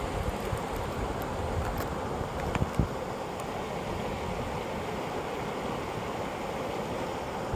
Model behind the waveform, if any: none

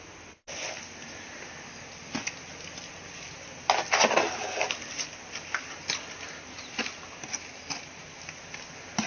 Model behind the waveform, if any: none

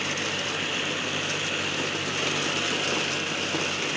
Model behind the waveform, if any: none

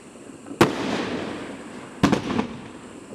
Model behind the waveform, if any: none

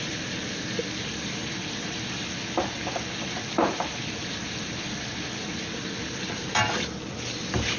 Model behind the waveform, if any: none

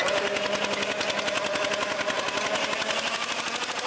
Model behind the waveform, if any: none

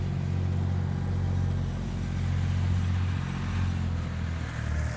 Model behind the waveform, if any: none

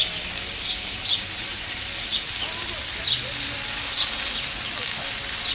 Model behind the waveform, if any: none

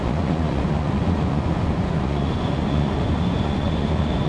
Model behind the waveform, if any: vocoder, Vocos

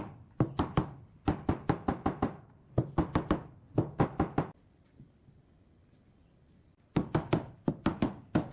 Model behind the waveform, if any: none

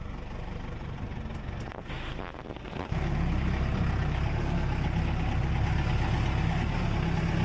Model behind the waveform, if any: none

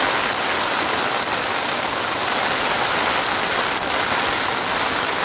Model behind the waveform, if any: none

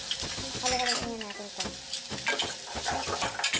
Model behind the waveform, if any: none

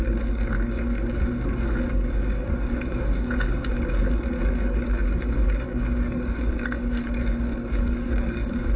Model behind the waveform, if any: codec, DAC